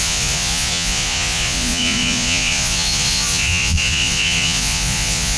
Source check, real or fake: fake